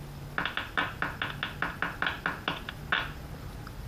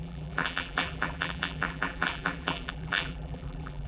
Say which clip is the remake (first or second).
second